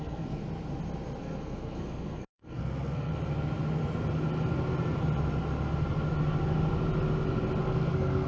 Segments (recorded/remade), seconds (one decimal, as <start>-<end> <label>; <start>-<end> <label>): 0.0-0.4 remade; 0.4-1.2 recorded; 1.2-3.1 remade; 3.1-7.6 recorded; 7.6-8.3 remade